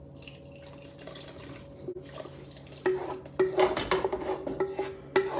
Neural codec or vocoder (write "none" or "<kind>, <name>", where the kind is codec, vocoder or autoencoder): none